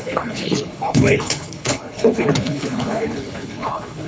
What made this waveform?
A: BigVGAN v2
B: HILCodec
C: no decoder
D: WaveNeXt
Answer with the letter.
B